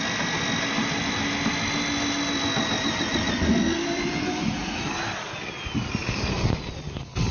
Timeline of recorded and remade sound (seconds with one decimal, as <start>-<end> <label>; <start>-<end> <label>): 0.0-4.4 recorded; 4.4-4.9 remade; 4.9-7.3 recorded